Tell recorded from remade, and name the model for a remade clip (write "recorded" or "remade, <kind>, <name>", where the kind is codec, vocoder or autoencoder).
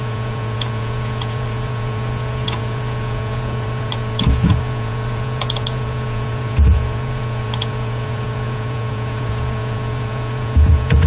remade, vocoder, Vocos